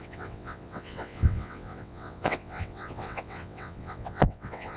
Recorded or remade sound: remade